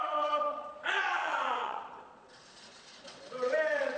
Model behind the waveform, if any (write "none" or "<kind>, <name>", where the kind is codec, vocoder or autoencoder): vocoder, Vocos